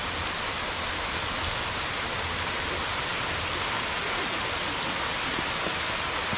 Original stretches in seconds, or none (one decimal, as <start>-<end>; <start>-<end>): 0.0-6.4